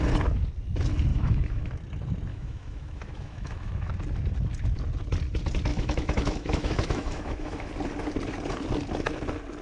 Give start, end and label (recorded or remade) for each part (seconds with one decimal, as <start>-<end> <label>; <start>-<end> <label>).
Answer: 0.0-1.1 recorded; 1.1-1.7 remade; 1.7-2.3 recorded; 2.3-3.9 remade; 3.9-5.7 recorded; 5.7-7.7 remade; 7.7-9.6 recorded

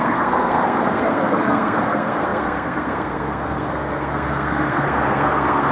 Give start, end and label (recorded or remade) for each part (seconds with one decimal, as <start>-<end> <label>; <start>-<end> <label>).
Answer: 0.0-5.7 remade

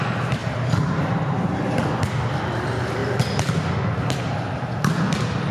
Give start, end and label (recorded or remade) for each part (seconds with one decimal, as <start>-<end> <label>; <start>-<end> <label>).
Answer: 0.0-5.5 recorded

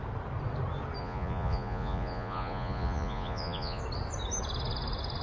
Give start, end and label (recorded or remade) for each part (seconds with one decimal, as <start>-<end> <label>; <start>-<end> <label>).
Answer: 0.0-1.0 recorded; 1.0-3.8 remade; 3.8-5.2 recorded

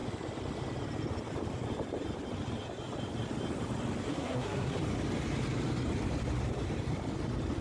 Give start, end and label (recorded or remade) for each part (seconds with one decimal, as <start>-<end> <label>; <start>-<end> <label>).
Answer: 0.0-4.1 recorded; 4.1-4.8 remade; 4.8-7.6 recorded

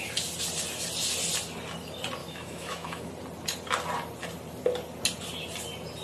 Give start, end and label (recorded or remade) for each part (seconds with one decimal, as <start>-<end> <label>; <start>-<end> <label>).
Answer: 0.0-2.2 recorded; 2.2-3.1 remade; 3.1-6.0 recorded

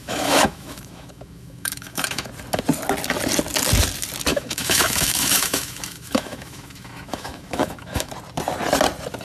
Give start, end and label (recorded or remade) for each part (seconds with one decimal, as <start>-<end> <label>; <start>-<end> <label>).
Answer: 0.0-2.3 remade; 2.3-4.3 recorded; 4.3-8.1 remade; 8.1-9.2 recorded

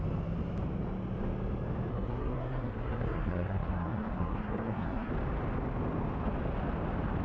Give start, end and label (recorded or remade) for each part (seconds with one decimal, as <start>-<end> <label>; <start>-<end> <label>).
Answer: 0.0-1.9 recorded; 1.9-5.1 remade; 5.1-7.2 recorded